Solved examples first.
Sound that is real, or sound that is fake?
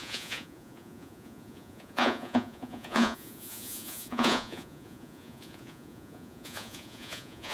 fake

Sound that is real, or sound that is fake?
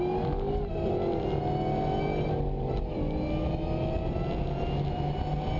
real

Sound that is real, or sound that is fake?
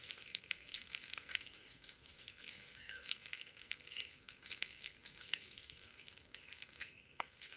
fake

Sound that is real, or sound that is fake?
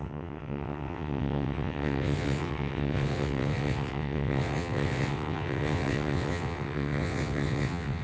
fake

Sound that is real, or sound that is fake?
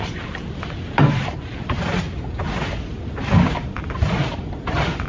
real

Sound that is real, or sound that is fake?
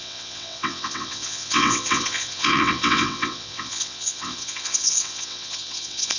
fake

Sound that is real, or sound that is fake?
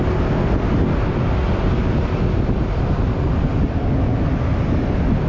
real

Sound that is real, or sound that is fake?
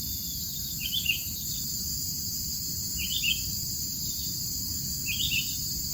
fake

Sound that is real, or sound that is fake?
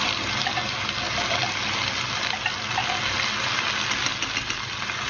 real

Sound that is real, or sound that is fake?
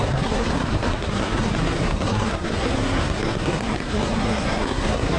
fake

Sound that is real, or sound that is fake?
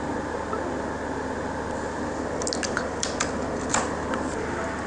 real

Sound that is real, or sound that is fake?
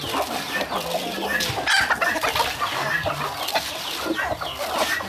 real